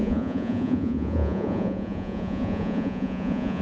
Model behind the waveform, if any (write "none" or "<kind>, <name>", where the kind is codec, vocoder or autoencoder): vocoder, Vocos